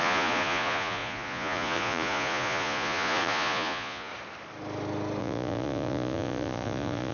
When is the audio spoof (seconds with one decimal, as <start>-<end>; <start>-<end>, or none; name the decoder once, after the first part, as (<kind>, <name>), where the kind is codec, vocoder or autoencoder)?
0.0-4.1 (vocoder, Vocos); 5.2-7.1